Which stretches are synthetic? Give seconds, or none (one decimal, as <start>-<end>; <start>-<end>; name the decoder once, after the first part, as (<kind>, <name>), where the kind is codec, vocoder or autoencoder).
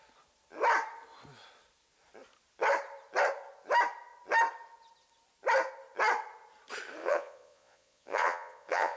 7.0-9.0 (vocoder, Vocos)